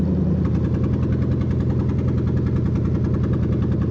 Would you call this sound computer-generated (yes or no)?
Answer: no